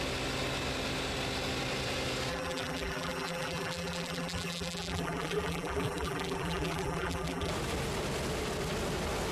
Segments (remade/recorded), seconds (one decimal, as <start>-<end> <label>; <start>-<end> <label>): 0.0-2.3 recorded; 2.3-7.5 remade; 7.5-9.3 recorded